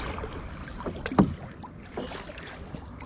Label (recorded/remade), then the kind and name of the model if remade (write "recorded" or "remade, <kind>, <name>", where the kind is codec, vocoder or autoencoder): recorded